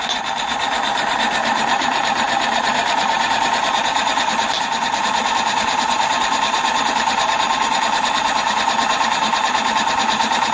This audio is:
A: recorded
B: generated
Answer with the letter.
B